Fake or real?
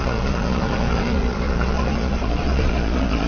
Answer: fake